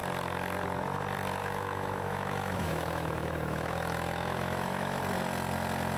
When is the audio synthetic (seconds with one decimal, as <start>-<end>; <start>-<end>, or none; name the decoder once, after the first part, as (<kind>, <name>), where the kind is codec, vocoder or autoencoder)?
1.4-5.0 (autoencoder, DAC-VAE)